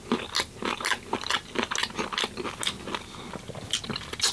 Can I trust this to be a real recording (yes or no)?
yes